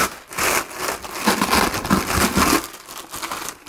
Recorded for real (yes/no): yes